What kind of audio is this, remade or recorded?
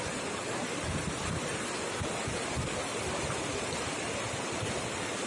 recorded